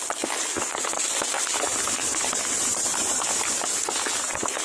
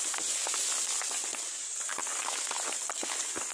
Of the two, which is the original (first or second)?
first